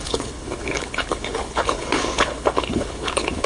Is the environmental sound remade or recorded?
remade